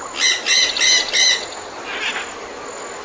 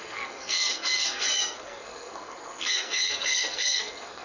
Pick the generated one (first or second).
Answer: second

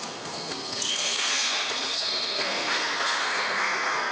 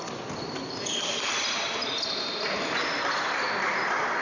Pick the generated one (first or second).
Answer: first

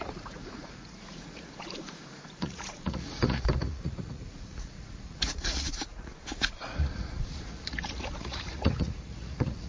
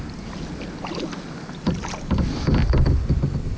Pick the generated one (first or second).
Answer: first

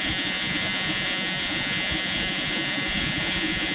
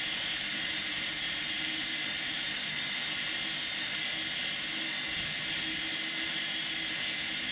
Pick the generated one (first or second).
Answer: first